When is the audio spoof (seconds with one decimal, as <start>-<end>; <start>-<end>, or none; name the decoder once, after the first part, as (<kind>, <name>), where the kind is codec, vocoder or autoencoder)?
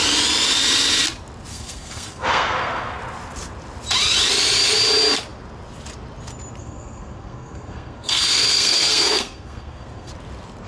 1.5-3.0 (codec, SNAC); 6.6-10.1